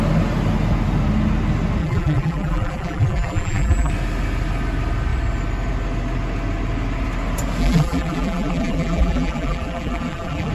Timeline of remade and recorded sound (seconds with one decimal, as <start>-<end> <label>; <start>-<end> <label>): 0.0-1.8 recorded; 1.8-3.9 remade; 3.9-7.6 recorded; 7.6-10.5 remade